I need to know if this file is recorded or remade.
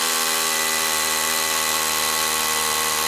recorded